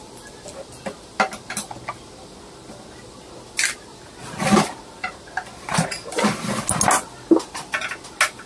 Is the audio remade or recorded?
recorded